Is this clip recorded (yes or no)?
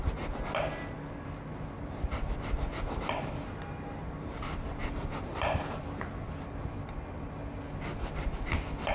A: yes